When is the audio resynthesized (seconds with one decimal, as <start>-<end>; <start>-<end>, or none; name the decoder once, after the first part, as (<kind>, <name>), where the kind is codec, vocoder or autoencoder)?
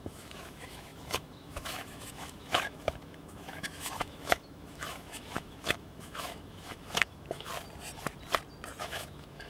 0.0-7.5 (autoencoder, DAC-VAE); 8.8-9.5